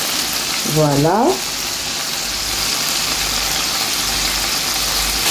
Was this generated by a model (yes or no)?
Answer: no